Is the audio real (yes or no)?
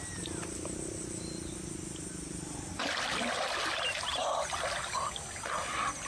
yes